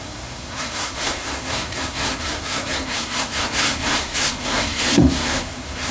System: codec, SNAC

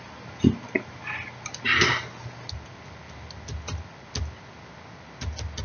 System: none